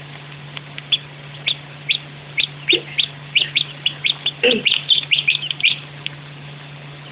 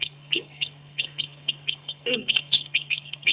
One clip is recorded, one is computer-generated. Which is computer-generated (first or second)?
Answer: second